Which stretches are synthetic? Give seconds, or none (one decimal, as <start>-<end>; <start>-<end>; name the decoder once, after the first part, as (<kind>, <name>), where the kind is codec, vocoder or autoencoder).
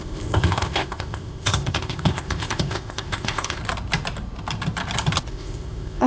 0.0-3.6 (codec, ZipCodec); 5.3-6.1